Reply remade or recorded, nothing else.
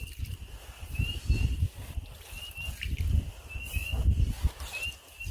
recorded